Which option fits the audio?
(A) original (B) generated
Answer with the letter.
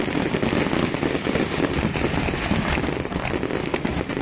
A